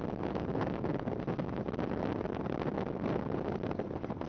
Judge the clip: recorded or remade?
recorded